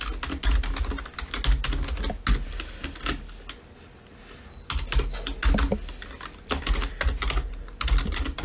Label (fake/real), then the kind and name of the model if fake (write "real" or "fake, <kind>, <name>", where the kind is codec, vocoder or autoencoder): real